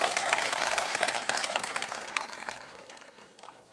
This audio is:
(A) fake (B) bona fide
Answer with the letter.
A